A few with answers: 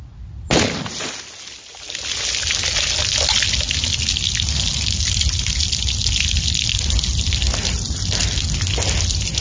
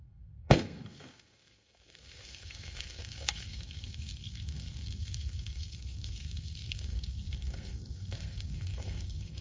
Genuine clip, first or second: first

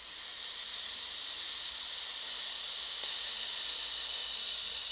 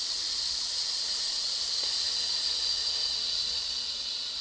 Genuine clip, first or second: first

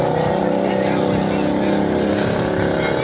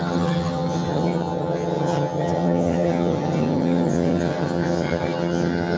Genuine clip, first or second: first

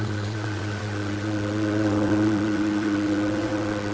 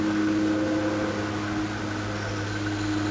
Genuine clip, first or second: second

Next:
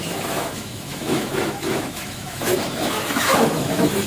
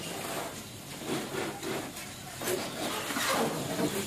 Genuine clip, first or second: second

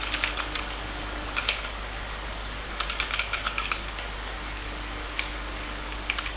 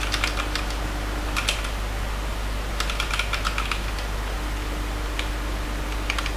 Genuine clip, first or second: second